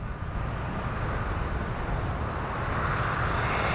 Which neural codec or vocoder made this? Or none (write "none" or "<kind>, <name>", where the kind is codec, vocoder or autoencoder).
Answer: none